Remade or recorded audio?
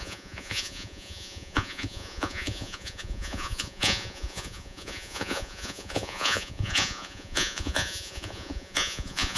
remade